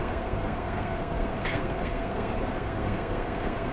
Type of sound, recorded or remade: remade